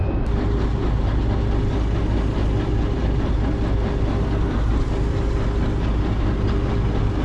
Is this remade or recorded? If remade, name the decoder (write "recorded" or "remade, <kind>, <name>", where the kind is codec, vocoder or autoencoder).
recorded